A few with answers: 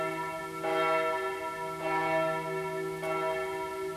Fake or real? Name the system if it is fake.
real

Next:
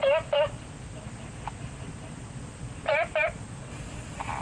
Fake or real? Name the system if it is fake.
real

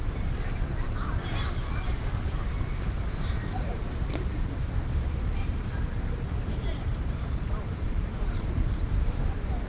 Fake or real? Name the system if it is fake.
fake, vocoder, BigVGAN v2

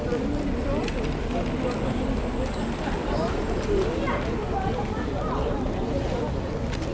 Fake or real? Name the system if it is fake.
real